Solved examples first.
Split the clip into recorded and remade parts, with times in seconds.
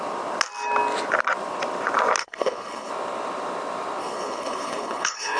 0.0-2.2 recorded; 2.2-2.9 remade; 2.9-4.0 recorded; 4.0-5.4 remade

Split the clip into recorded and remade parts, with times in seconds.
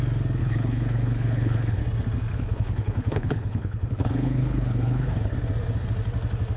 0.0-0.4 recorded; 0.4-1.8 remade; 1.8-2.3 recorded; 2.3-5.3 remade; 5.3-6.6 recorded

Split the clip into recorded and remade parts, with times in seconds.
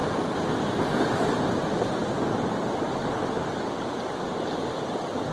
0.0-5.3 recorded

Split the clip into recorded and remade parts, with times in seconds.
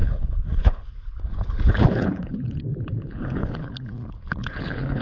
0.0-5.0 remade